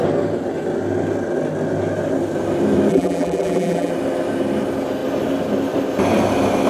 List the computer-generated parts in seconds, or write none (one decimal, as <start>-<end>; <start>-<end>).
2.9-3.9